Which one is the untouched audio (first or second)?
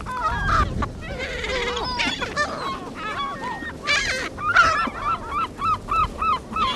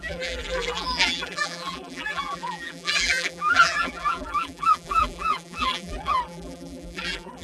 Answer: first